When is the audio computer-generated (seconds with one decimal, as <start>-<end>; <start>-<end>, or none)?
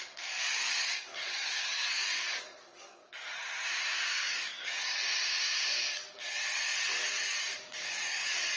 0.0-3.4; 4.1-5.0; 5.7-8.6